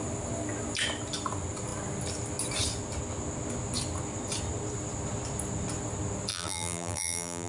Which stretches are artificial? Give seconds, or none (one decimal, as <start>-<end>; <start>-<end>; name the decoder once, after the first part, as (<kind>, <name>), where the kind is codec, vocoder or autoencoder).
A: 6.3-7.5 (vocoder, BigVGAN v2)